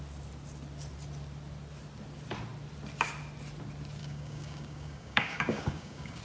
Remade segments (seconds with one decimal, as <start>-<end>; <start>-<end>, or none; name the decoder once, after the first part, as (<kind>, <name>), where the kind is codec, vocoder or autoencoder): 4.0-6.2 (codec, DAC)